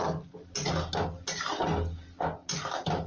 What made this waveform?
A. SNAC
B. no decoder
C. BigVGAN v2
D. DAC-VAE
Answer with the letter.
B